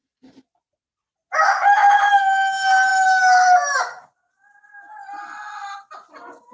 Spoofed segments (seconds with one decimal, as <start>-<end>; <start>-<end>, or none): none